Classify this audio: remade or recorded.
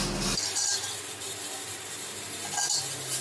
recorded